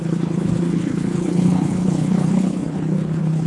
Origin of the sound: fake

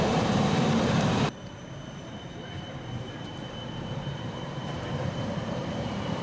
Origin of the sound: fake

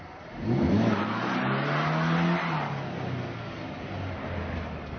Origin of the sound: real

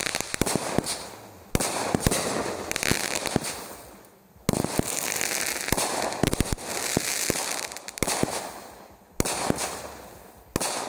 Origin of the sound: real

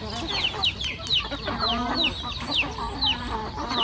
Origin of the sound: real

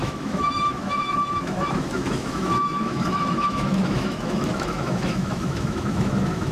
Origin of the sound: fake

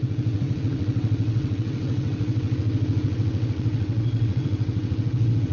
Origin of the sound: fake